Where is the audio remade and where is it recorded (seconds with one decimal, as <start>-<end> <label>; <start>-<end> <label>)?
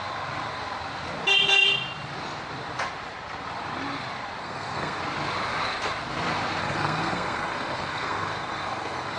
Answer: 0.0-4.4 recorded; 4.4-5.0 remade; 5.0-6.6 recorded; 6.6-9.2 remade